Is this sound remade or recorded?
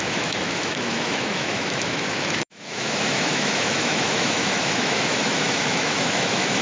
remade